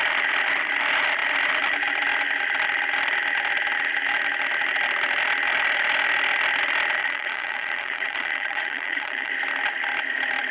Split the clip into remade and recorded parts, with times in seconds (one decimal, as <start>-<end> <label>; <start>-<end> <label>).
0.0-7.0 recorded; 7.0-9.3 remade; 9.3-10.5 recorded